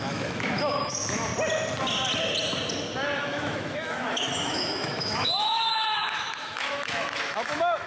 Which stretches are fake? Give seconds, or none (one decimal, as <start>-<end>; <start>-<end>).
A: 0.0-1.3; 3.2-7.9